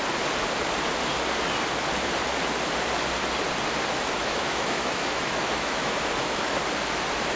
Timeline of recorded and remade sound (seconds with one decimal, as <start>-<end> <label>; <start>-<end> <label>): 0.0-4.2 recorded; 4.2-6.6 remade; 6.6-7.4 recorded